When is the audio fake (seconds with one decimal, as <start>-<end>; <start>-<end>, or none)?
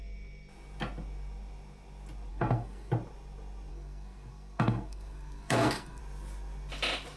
2.3-2.9; 3.7-6.0